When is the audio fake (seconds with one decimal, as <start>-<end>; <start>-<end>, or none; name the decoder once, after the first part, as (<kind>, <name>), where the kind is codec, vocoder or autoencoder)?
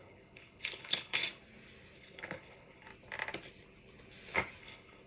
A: 0.0-1.2 (codec, HILCodec); 2.0-2.9; 4.6-5.1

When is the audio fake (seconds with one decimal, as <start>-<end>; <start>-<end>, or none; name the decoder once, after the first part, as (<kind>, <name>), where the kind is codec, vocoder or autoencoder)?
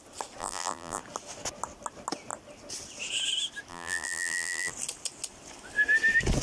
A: 0.4-1.0 (vocoder, BigVGAN v2); 3.7-4.7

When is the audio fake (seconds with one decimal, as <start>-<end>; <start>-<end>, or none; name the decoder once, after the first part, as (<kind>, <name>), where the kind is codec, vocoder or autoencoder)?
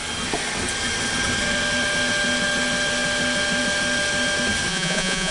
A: 4.7-5.3 (vocoder, Vocos)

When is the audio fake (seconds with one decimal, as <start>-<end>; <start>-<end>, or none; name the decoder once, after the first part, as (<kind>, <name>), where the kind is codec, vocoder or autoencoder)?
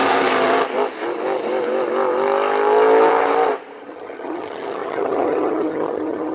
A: 3.8-6.3 (vocoder, HiFi-GAN)